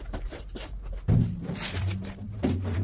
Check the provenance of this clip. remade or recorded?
remade